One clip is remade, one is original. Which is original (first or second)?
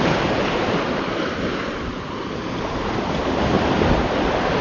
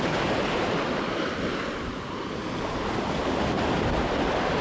second